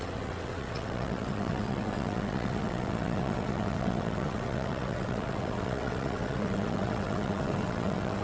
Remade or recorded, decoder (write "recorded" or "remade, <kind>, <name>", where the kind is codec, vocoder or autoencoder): remade, vocoder, WaveNeXt